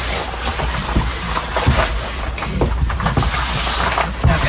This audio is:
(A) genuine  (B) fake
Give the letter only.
A